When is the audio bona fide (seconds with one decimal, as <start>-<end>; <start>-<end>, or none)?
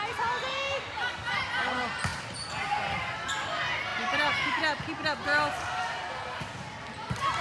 0.0-7.4